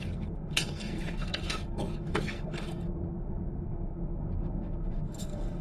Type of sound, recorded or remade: remade